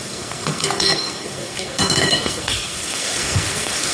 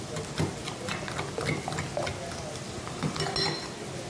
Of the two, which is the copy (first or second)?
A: first